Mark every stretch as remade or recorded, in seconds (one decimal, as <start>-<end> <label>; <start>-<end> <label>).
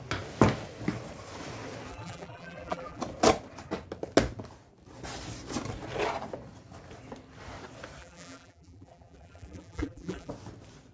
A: 0.0-1.9 recorded; 1.9-3.0 remade; 3.0-8.0 recorded; 8.0-10.3 remade; 10.3-10.9 recorded